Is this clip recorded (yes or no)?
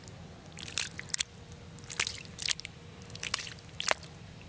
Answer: yes